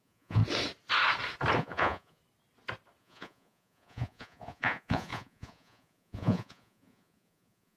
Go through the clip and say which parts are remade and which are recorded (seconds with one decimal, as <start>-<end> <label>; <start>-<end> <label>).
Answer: 0.0-0.4 remade; 0.4-1.6 recorded; 1.6-2.2 remade; 2.2-3.0 recorded; 3.0-7.8 remade